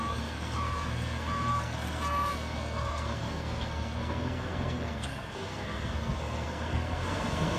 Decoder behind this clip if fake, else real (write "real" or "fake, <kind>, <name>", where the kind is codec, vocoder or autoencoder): fake, codec, SNAC